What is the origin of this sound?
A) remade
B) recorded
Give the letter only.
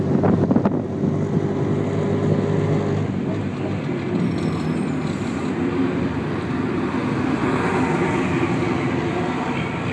B